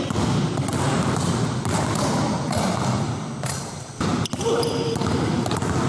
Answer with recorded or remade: recorded